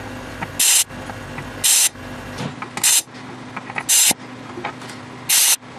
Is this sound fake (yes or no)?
no